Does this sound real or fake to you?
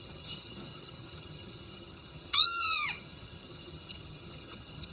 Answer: fake